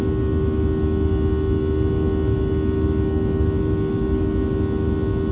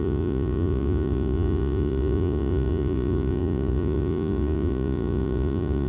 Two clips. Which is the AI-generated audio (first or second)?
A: second